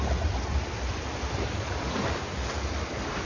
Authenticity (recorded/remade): remade